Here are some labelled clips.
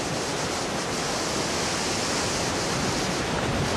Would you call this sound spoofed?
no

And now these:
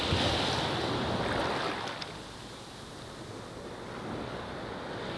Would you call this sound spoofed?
no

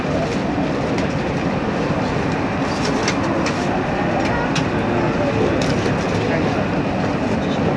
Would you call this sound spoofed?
no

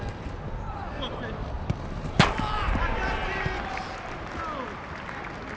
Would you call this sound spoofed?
no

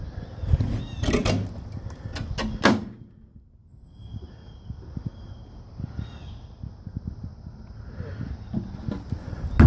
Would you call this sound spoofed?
no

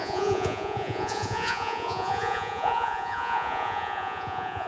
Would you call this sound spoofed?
yes